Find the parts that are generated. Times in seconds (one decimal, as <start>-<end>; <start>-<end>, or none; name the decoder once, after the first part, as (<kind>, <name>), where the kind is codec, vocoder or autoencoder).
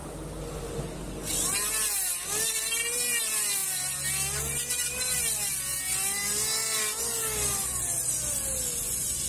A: none